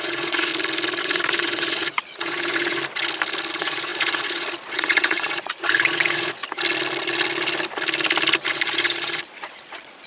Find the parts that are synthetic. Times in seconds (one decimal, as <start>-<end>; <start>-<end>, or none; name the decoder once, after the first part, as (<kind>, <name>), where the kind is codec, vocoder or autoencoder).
0.0-0.5 (vocoder, Vocos); 1.0-2.8; 3.5-6.4; 8.5-10.1